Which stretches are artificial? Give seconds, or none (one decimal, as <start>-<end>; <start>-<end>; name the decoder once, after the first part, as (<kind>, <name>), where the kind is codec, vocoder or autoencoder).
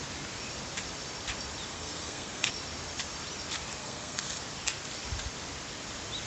1.7-2.5 (codec, SNAC); 3.8-4.4